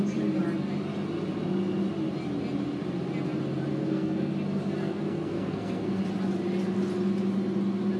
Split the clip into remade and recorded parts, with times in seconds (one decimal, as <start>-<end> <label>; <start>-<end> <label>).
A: 0.0-3.7 recorded; 3.7-4.3 remade; 4.3-4.8 recorded; 4.8-6.0 remade; 6.0-8.0 recorded